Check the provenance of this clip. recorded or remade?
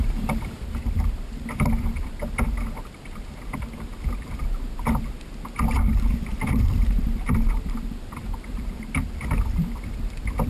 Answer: remade